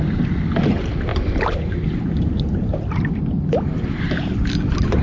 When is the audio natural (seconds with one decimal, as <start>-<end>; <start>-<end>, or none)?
0.0-1.1; 3.2-5.0